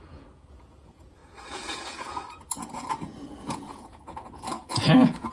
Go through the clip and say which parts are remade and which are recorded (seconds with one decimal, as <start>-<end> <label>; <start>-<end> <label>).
0.0-5.3 remade